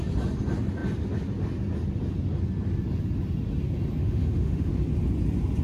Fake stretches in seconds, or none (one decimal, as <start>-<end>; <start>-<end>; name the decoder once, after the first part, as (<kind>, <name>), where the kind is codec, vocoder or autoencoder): 4.0-4.7 (autoencoder, DAC-VAE)

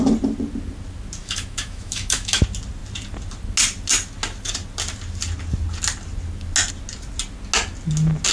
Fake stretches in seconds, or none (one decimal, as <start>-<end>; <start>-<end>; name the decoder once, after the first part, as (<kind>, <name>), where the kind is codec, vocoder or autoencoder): 1.2-2.4 (autoencoder, DAC-VAE)

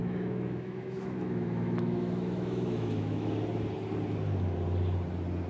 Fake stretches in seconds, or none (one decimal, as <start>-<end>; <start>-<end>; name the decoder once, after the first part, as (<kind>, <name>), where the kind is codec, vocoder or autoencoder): 0.0-3.3 (autoencoder, DAC-VAE)

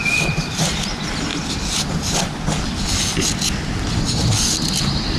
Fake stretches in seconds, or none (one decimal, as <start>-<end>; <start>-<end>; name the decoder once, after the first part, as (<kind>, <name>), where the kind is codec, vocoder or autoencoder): none

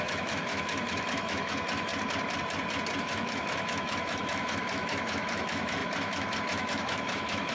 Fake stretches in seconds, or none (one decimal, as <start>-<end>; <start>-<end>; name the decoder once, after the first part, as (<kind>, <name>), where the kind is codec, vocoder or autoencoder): 0.0-1.9 (autoencoder, DAC-VAE); 3.0-7.5

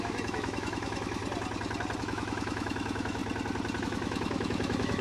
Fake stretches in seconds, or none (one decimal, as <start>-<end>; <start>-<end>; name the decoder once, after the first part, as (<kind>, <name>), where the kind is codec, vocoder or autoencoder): 0.0-1.2 (autoencoder, DAC-VAE); 2.0-3.2; 3.8-5.0

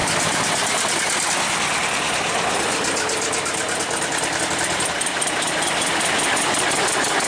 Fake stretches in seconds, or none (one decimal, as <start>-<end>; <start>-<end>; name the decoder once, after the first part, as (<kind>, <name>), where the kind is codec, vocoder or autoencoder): none